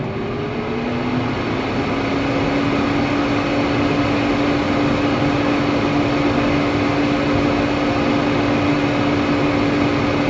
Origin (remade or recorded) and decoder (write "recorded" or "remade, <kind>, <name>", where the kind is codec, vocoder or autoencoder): recorded